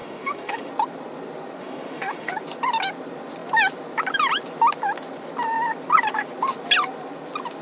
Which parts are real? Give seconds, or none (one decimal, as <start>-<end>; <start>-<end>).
0.7-1.6; 2.3-7.6